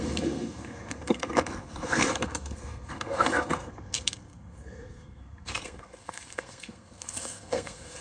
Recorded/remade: remade